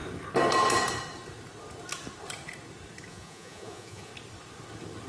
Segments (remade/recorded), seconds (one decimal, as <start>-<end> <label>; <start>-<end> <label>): 0.0-3.1 recorded; 3.1-4.1 remade; 4.1-5.1 recorded